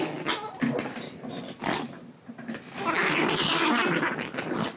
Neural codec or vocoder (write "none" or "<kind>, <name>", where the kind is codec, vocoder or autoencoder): none